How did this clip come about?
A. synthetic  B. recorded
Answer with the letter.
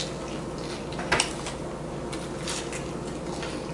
B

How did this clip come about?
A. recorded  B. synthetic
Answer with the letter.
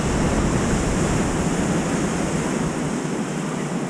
A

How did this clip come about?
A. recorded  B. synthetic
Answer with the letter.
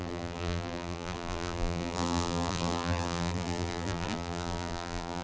B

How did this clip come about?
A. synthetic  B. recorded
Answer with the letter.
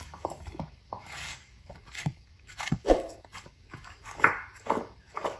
A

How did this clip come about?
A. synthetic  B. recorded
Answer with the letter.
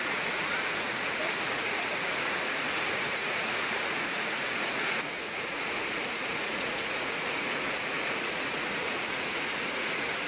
A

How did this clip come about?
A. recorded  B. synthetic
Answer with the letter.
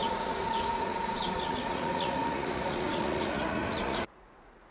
B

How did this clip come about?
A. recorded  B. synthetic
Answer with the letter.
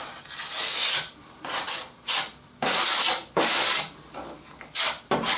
A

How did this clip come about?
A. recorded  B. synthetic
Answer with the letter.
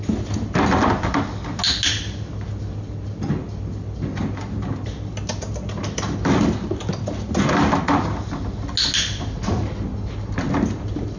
A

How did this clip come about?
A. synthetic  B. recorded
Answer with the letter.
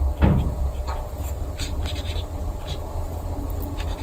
B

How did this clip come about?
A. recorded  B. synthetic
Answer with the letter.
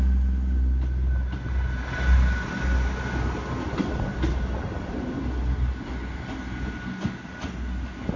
A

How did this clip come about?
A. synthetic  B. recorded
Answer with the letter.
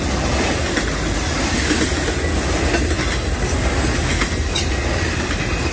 B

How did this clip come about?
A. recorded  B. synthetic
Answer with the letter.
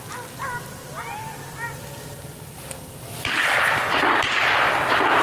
A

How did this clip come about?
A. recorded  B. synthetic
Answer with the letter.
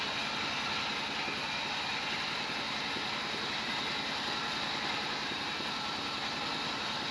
A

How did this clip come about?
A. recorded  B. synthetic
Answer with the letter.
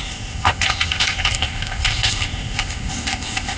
B